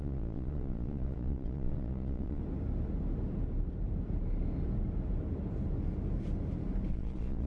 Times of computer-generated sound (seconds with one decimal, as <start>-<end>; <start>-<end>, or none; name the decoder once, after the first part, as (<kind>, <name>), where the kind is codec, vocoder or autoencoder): 0.0-2.4 (vocoder, Vocos); 6.9-7.5